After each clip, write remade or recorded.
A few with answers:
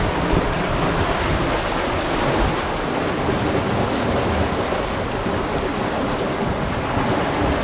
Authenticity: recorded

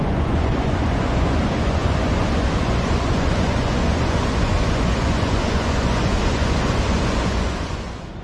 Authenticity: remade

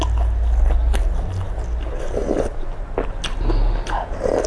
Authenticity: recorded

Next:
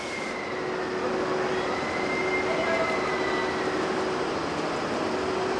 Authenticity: recorded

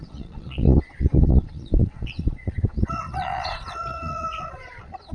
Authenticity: remade